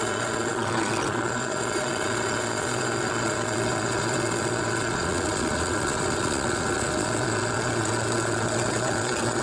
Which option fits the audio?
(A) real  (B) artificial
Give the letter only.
B